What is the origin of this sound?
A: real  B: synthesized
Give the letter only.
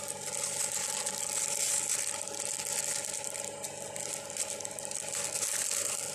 A